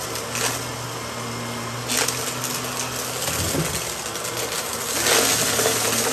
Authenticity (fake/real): real